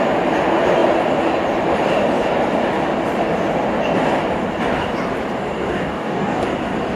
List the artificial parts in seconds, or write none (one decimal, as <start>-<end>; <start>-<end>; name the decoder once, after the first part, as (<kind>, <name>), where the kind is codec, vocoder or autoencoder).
5.7-6.4 (codec, DAC)